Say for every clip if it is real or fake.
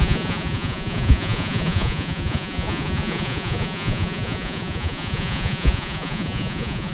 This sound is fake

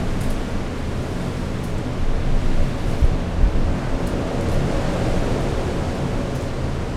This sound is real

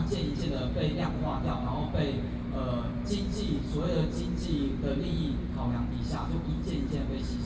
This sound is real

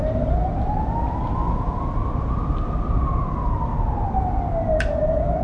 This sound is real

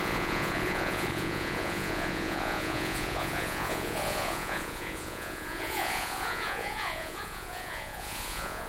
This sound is fake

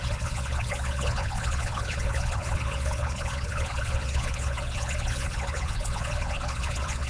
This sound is fake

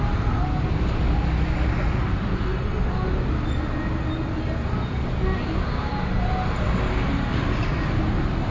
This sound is real